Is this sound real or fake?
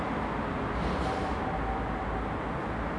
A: real